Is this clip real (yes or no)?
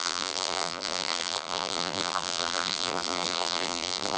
no